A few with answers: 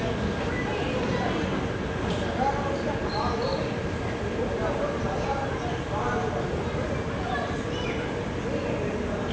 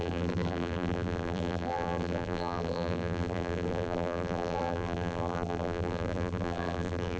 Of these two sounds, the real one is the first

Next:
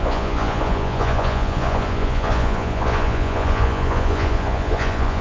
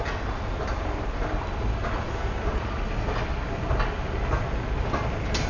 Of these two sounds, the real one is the second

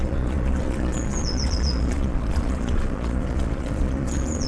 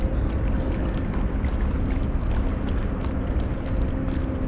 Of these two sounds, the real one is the second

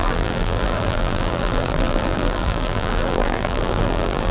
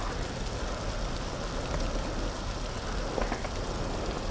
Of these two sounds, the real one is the second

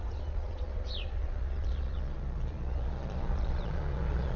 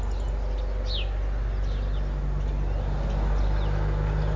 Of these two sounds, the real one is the second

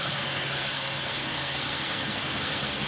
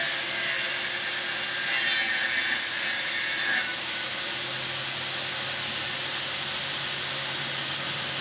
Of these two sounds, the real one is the second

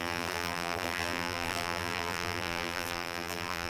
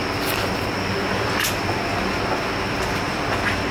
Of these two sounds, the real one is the second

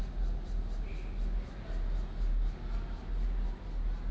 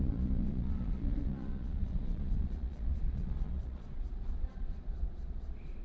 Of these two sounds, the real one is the first